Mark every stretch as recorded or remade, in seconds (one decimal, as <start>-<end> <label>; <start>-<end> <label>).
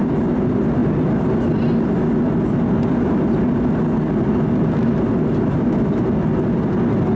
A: 0.0-7.2 recorded